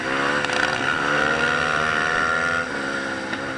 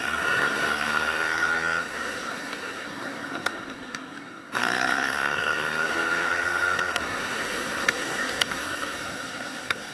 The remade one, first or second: second